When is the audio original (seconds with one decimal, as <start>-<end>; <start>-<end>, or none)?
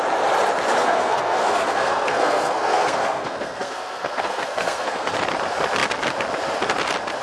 0.0-0.8; 5.1-7.2